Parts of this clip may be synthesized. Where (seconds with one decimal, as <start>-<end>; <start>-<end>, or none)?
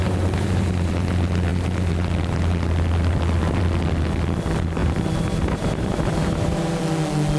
0.0-0.9; 4.8-6.8